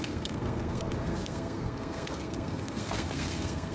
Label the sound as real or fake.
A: fake